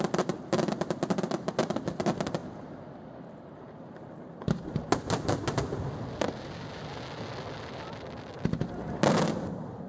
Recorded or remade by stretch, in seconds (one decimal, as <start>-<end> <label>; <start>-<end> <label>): 0.0-9.9 recorded